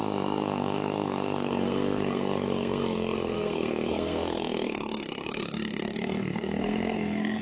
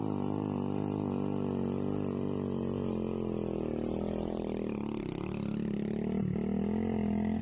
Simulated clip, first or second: first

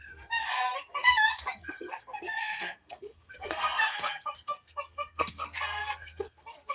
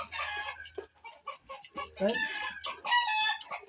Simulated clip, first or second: first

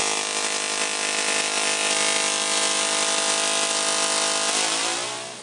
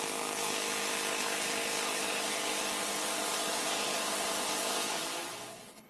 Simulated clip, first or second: second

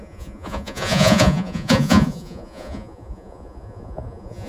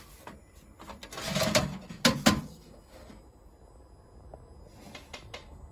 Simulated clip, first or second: first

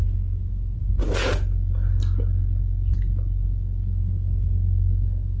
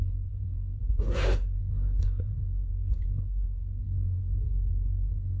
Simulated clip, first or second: second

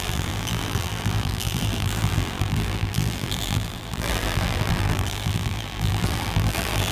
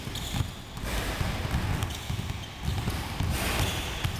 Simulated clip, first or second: first